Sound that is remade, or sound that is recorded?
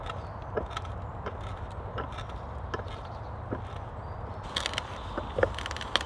recorded